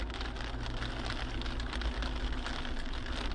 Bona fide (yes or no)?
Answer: yes